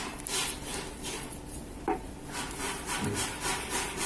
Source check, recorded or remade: recorded